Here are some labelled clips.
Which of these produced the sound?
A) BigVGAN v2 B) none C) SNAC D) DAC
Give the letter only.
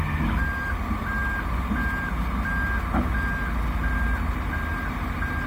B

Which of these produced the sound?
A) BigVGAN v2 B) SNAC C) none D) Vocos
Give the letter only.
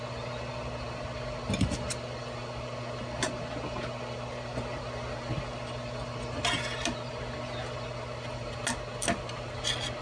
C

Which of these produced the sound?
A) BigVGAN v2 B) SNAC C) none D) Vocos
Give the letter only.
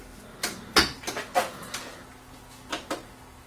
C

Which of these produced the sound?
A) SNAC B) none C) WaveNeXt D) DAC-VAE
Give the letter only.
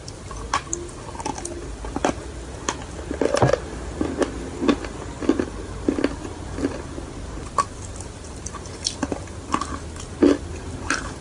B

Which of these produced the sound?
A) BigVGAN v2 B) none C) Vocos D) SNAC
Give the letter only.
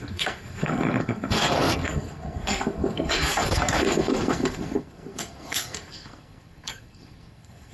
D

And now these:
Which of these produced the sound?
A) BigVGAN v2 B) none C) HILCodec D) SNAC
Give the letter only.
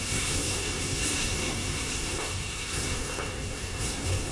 D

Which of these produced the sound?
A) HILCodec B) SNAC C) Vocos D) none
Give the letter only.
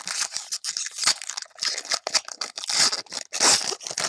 D